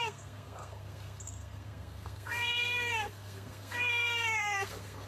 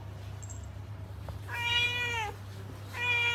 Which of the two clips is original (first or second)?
second